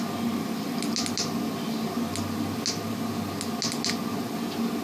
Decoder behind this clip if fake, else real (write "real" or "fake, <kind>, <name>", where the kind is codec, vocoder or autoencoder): real